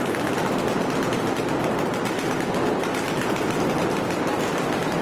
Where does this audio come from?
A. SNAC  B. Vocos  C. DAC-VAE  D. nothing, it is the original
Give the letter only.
D